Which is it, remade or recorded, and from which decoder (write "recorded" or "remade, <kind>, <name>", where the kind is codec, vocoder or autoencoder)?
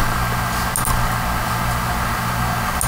recorded